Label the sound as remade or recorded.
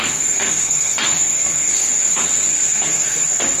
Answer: remade